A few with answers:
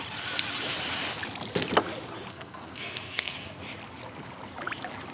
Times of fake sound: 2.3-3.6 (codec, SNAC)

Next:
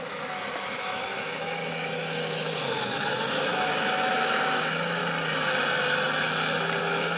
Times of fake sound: 0.0-5.0 (autoencoder, DAC-VAE); 6.8-7.2

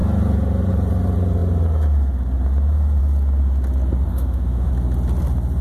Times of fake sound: 4.1-4.7 (autoencoder, DAC-VAE)

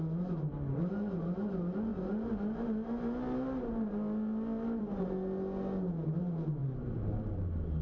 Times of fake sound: none

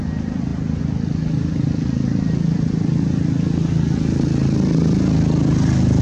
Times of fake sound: none

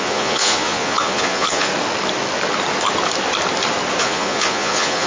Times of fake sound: 0.0-1.7 (vocoder, Vocos); 4.0-5.1